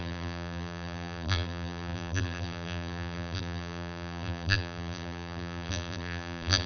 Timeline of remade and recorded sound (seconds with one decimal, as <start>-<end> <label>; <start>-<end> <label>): 0.0-6.7 remade